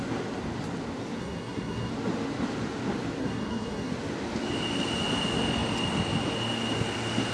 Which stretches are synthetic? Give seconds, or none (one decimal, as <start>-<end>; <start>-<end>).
1.2-1.9; 3.2-3.9